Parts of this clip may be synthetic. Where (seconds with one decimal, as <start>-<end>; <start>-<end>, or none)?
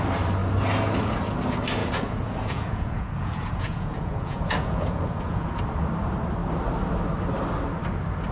1.8-5.6